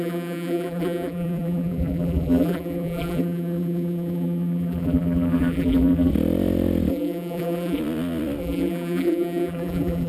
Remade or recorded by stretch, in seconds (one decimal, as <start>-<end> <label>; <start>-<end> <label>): 0.0-6.1 remade; 6.1-6.9 recorded; 6.9-7.8 remade; 7.8-8.4 recorded; 8.4-10.1 remade